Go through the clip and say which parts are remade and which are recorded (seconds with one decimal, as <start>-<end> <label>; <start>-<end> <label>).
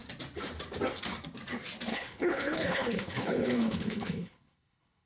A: 0.0-1.9 recorded; 1.9-5.1 remade